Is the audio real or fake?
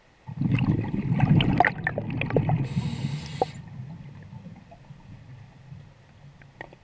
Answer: real